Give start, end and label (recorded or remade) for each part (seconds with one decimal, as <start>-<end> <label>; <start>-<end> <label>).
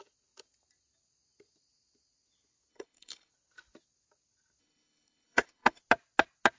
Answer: 0.0-2.7 recorded; 2.7-3.3 remade; 3.3-4.6 recorded; 4.6-5.8 remade; 5.8-6.6 recorded